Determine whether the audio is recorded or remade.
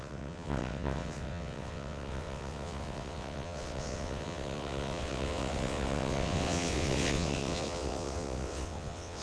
remade